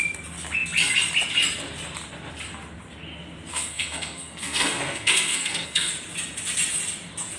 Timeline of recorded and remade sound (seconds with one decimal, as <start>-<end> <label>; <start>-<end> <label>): 0.0-3.5 recorded; 3.5-5.9 remade; 5.9-7.4 recorded